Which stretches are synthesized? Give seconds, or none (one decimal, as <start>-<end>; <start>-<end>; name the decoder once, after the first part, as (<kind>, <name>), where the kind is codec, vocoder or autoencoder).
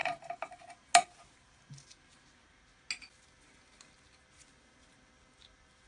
0.0-0.6 (vocoder, BigVGAN v2)